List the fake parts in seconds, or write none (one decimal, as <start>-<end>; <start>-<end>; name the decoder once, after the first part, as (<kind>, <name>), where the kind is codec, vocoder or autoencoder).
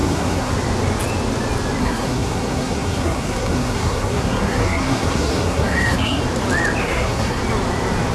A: 0.0-0.5 (codec, SNAC); 1.8-6.2; 6.8-7.4